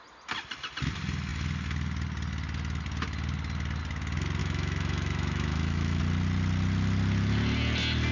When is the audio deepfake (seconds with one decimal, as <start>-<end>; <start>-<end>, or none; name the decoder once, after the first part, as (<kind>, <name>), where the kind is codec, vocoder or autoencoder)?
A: 4.4-6.0 (autoencoder, DAC-VAE)